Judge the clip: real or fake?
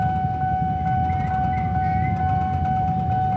real